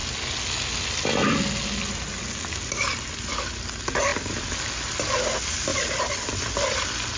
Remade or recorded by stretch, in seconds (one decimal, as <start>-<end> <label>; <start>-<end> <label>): 0.0-7.2 recorded